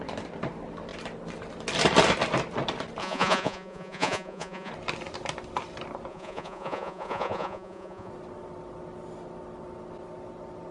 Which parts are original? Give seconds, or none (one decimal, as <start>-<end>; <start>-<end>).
0.0-3.0; 4.7-6.1; 8.1-10.7